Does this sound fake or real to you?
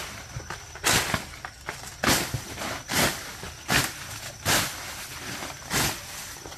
real